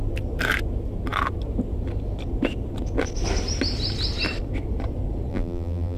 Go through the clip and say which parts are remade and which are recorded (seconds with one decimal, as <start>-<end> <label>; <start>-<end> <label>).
0.0-5.3 recorded; 5.3-6.0 remade